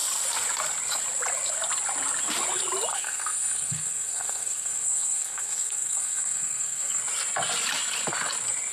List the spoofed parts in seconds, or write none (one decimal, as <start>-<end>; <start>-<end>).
2.9-7.0